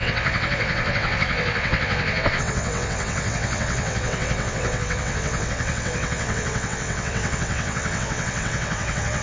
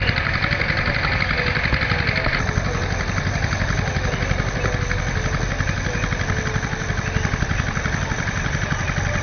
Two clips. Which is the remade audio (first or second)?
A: first